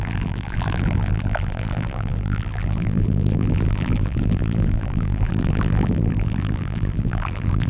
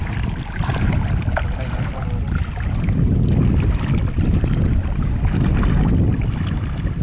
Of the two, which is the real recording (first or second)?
second